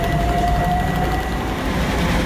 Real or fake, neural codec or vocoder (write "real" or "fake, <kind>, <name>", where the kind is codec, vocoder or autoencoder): real